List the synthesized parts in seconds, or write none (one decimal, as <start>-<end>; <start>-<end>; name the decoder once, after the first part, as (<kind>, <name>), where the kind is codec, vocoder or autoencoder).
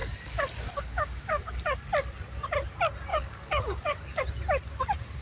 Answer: 0.0-1.9 (codec, DAC); 3.1-4.2